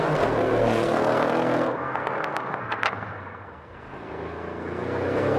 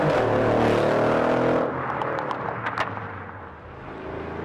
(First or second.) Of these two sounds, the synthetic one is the first